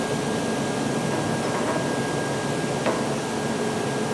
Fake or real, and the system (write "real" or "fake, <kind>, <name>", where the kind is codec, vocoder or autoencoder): real